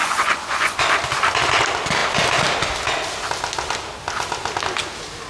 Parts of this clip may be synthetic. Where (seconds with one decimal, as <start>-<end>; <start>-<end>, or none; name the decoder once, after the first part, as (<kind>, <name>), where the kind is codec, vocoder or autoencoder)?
0.0-0.8 (vocoder, Vocos)